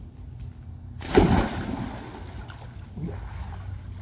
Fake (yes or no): no